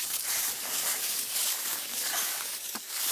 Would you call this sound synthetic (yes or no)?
yes